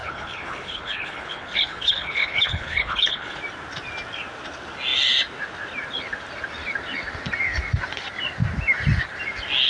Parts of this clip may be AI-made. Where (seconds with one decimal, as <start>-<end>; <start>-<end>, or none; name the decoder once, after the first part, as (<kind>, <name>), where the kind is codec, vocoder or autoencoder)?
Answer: 0.0-3.4 (codec, HILCodec)